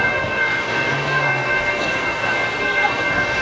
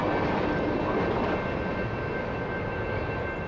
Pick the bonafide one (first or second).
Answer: second